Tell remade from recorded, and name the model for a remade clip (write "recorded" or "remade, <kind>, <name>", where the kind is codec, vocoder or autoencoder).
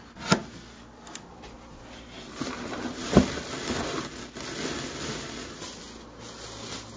recorded